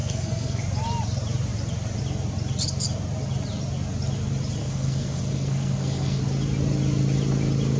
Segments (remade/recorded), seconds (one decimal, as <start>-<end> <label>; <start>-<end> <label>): 0.0-0.6 remade; 0.6-4.6 recorded; 4.6-6.2 remade; 6.2-7.8 recorded